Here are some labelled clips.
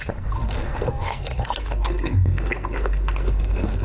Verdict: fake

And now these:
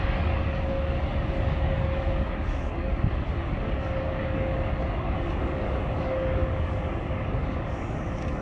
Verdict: fake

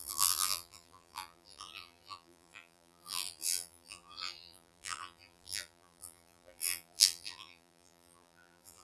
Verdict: fake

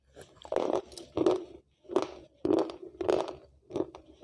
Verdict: real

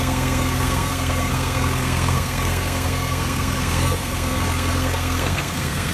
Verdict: fake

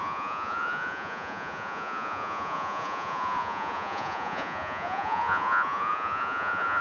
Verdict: fake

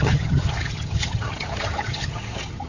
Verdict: fake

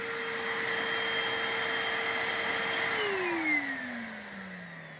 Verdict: real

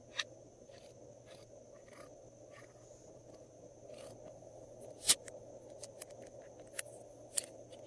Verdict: real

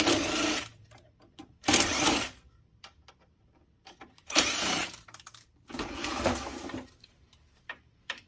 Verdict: fake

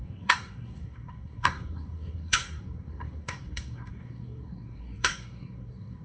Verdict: fake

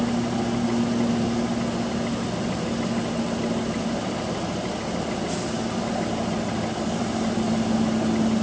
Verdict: real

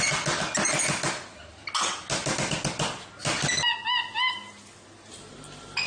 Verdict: real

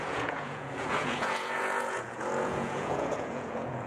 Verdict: fake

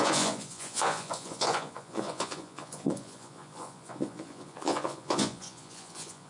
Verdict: fake